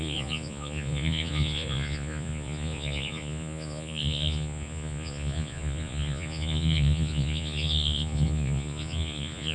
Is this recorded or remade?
remade